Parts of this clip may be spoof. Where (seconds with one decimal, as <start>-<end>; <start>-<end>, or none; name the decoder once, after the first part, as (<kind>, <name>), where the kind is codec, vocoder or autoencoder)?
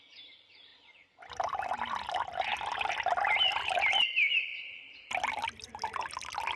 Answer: 4.5-5.7 (vocoder, BigVGAN v2)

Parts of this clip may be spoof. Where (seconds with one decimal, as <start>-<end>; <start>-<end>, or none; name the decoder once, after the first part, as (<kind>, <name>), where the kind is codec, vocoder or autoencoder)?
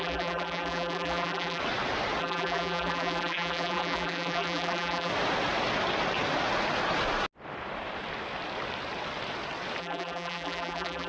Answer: 0.0-1.6 (vocoder, BigVGAN v2); 2.2-5.1; 9.8-11.1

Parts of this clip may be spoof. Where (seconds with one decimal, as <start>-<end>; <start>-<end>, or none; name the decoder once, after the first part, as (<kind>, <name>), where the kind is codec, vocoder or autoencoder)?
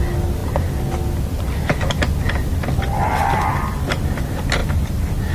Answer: none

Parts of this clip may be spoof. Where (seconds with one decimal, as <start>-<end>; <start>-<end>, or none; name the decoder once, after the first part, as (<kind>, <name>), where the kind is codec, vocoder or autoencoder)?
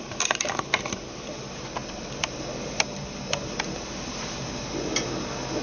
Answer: 1.8-4.8 (vocoder, BigVGAN v2)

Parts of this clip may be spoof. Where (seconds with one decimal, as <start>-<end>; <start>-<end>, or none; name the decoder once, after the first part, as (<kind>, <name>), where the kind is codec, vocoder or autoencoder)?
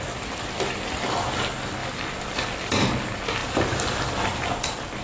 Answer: 1.8-2.7 (vocoder, BigVGAN v2); 3.4-4.2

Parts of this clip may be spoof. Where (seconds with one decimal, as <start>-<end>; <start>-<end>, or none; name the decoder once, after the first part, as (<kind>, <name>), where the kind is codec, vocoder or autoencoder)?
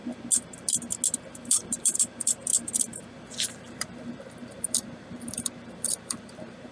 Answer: 1.3-6.7 (vocoder, BigVGAN v2)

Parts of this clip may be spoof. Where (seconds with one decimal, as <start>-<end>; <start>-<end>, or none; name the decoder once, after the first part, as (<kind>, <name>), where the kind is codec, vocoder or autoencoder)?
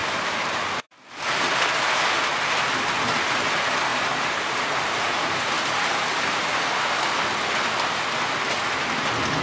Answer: 0.0-0.6 (vocoder, BigVGAN v2); 3.9-6.4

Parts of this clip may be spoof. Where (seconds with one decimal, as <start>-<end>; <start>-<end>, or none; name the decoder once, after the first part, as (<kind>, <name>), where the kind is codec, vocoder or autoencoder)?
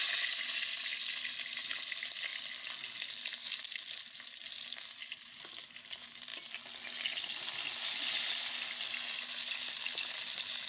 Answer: none